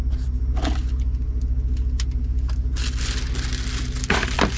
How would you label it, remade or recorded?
recorded